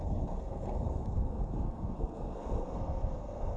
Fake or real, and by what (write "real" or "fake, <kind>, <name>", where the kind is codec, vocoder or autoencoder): fake, codec, SNAC